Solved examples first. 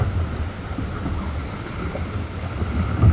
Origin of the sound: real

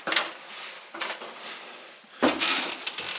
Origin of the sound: real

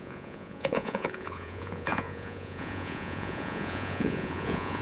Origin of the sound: fake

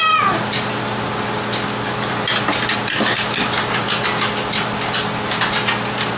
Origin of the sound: real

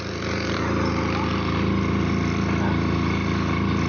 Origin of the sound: real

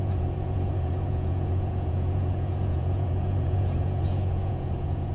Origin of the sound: fake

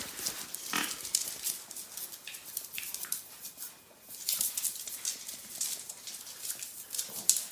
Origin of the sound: real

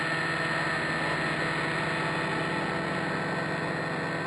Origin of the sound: real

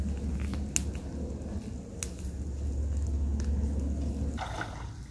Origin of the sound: real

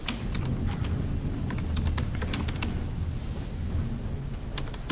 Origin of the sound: real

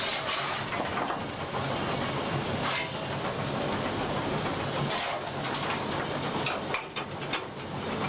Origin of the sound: real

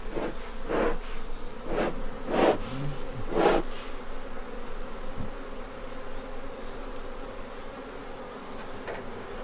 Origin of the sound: real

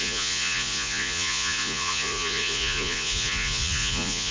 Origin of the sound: fake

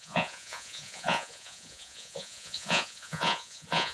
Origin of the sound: fake